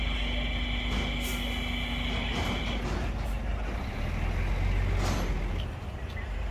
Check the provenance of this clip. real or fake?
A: real